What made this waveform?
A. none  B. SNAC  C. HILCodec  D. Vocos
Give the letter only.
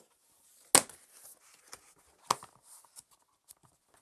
A